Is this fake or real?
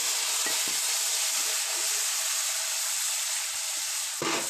real